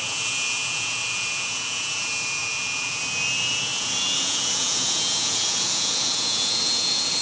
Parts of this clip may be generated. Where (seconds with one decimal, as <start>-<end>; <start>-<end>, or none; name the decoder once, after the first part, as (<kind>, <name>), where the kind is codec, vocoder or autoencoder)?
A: 0.0-7.2 (vocoder, Vocos)